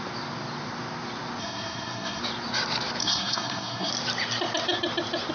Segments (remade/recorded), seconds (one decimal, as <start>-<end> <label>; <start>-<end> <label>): 0.0-1.4 recorded; 1.4-2.2 remade; 2.2-3.0 recorded; 3.0-3.9 remade; 3.9-5.3 recorded